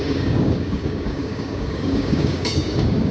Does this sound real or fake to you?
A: fake